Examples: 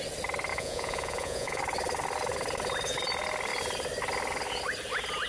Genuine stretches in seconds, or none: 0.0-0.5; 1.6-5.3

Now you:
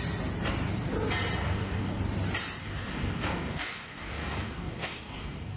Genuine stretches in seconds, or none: 0.0-1.4; 2.0-2.6

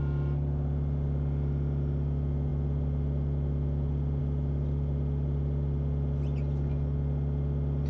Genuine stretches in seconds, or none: 0.0-7.9

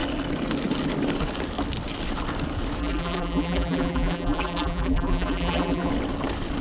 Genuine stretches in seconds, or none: 0.0-2.8; 5.9-6.6

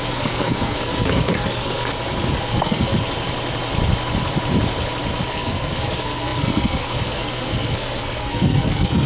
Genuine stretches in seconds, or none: 1.9-2.4; 2.9-5.3

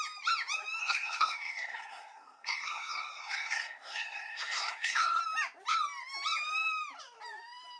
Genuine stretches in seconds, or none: 0.0-0.8; 5.2-7.8

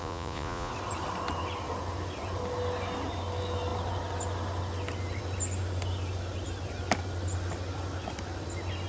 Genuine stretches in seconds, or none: 0.7-8.9

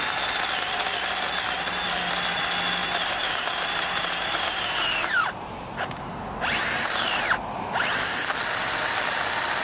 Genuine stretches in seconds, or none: 0.0-2.8; 6.4-9.6